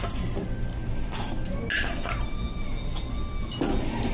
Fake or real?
real